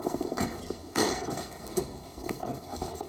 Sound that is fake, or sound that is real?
fake